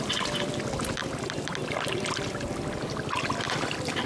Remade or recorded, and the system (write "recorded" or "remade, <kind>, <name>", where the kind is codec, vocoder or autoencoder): recorded